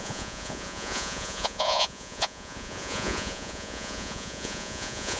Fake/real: fake